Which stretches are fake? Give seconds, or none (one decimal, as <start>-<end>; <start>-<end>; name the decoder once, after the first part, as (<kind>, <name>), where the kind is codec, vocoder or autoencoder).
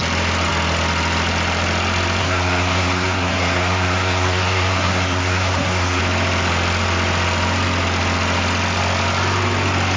2.2-6.0 (codec, SNAC)